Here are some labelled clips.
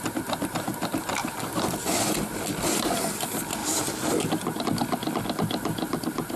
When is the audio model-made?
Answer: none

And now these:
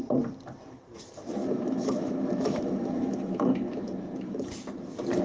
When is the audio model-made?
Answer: 1.4-4.5

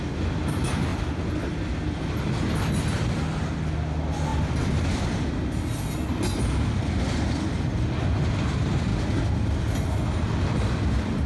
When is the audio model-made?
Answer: none

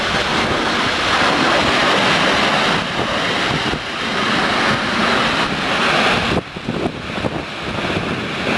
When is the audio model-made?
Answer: none

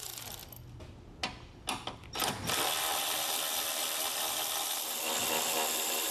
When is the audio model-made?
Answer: none

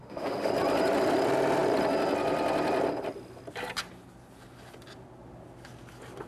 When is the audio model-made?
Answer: 0.0-0.5

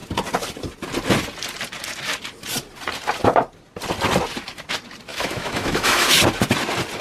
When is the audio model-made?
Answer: 5.1-6.2

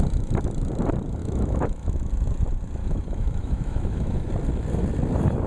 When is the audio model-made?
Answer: 1.2-2.1; 2.8-4.3